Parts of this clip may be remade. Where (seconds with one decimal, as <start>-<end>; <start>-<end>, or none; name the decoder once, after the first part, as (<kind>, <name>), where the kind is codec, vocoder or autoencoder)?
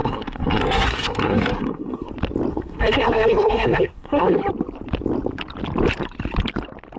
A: 0.0-2.1 (codec, SNAC); 2.5-4.4